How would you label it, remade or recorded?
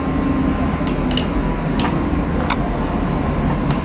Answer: recorded